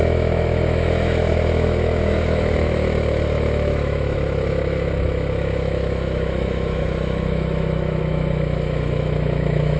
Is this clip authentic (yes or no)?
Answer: no